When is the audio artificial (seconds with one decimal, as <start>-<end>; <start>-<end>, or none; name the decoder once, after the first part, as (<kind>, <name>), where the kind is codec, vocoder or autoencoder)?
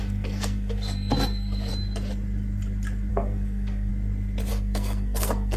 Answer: 0.0-1.7 (codec, SNAC); 3.1-3.9; 4.5-5.6